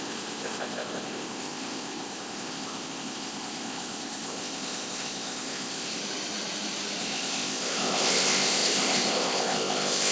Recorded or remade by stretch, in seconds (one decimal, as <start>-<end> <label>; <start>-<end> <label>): 0.0-6.0 remade; 6.0-7.0 recorded; 7.0-10.1 remade